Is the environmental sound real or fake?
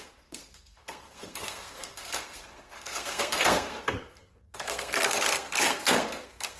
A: fake